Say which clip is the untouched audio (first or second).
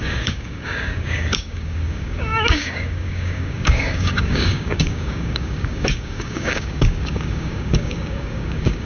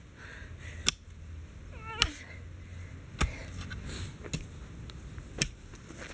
second